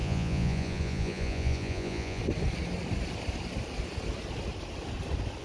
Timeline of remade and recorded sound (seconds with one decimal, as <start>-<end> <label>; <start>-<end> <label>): 0.0-2.2 remade; 2.2-5.4 recorded